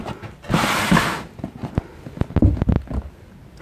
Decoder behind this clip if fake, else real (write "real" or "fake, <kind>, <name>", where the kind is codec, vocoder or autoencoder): real